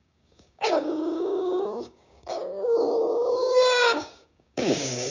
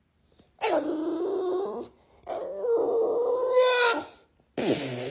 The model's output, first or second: first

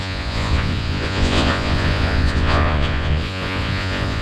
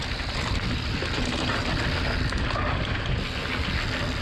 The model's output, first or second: first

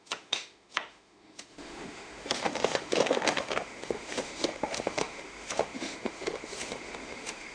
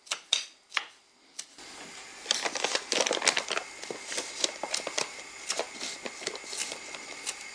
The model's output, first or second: first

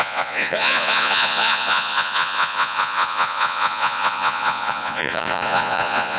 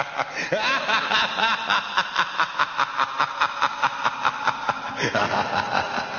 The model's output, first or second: first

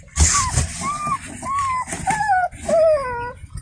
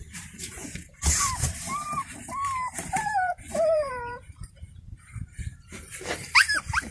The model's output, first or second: second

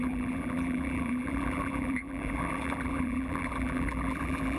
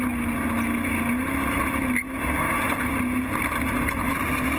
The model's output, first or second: first